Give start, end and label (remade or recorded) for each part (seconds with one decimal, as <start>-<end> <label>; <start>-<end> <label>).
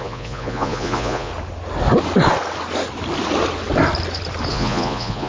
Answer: 0.0-1.3 remade; 1.3-4.5 recorded; 4.5-5.3 remade